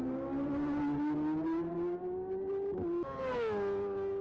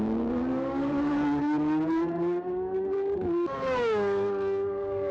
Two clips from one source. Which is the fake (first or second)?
second